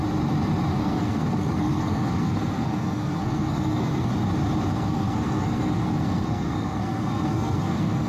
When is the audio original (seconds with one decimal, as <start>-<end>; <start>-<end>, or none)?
0.0-0.8; 4.1-4.7